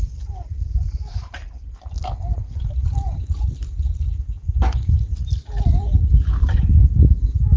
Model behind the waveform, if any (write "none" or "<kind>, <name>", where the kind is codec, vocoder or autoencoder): none